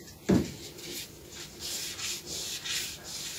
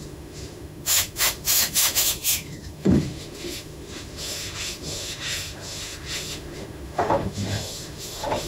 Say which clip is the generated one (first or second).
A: second